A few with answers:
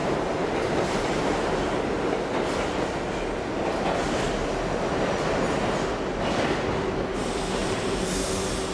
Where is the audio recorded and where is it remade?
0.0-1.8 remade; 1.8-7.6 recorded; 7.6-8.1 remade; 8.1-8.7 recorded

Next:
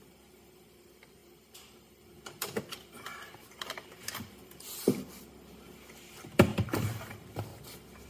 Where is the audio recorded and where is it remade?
0.0-1.2 recorded; 1.2-5.2 remade; 5.2-6.5 recorded; 6.5-7.0 remade; 7.0-8.1 recorded

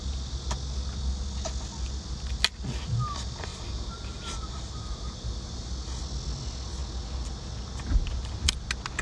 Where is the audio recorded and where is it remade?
0.0-3.5 recorded; 3.5-5.7 remade; 5.7-9.0 recorded

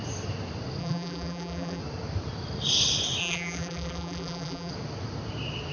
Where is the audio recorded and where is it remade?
0.0-0.8 recorded; 0.8-1.8 remade; 1.8-3.2 recorded; 3.2-4.7 remade; 4.7-5.7 recorded

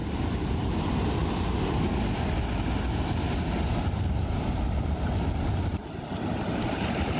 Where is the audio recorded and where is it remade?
0.0-0.7 recorded; 0.7-1.2 remade; 1.2-4.3 recorded; 4.3-5.8 remade; 5.8-6.5 recorded; 6.5-7.2 remade

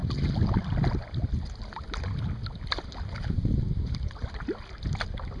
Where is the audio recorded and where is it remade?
0.0-5.4 recorded